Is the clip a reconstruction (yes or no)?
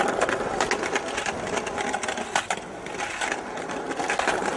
no